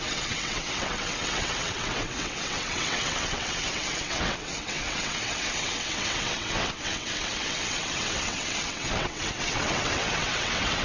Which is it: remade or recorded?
remade